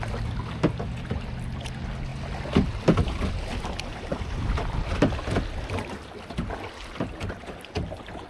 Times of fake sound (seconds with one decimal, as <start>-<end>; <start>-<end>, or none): none